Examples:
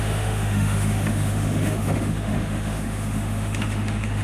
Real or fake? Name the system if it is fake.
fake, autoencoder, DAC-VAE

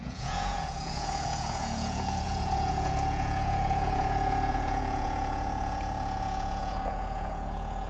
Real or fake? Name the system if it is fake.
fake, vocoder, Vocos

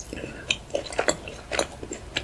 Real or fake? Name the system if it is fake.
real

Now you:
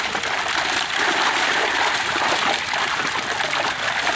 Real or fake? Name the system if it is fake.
real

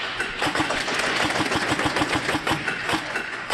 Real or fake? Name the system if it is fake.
fake, vocoder, Vocos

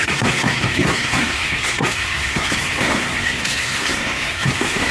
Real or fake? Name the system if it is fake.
fake, codec, SNAC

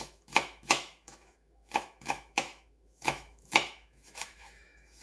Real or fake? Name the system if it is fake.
fake, autoencoder, DAC-VAE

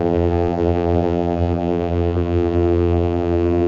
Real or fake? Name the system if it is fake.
fake, vocoder, BigVGAN v2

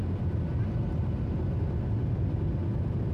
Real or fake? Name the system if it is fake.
real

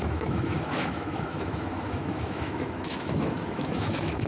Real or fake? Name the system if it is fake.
fake, autoencoder, DAC-VAE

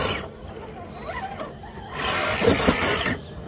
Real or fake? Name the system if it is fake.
real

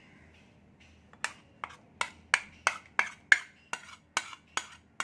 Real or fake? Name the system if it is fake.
real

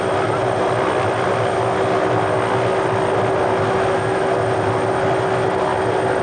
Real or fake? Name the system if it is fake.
real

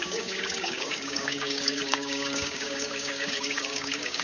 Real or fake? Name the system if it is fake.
fake, codec, DAC